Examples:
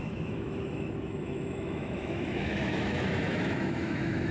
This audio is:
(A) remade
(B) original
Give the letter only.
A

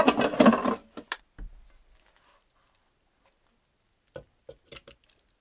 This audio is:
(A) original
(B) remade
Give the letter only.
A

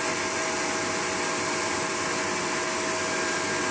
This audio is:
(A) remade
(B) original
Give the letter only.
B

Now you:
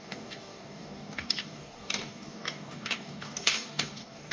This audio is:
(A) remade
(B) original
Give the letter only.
A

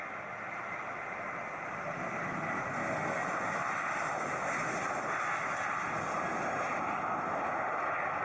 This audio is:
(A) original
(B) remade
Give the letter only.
A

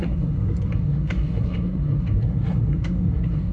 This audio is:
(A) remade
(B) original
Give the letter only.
A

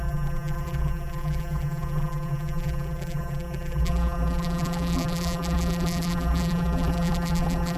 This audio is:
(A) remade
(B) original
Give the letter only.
A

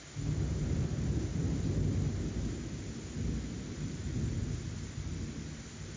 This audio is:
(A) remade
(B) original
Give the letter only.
B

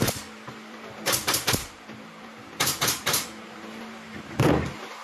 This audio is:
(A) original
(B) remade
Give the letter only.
B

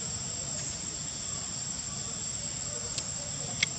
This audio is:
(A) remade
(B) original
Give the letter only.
B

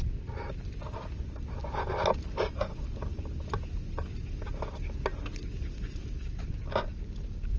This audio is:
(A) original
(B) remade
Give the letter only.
A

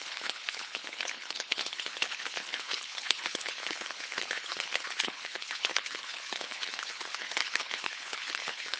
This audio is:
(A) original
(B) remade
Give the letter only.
B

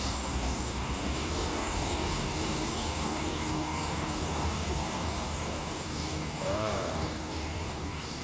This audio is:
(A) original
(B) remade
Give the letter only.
B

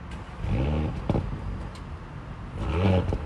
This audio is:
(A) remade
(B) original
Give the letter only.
B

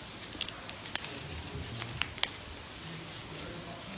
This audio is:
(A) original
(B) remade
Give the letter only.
A